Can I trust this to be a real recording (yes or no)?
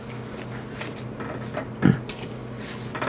yes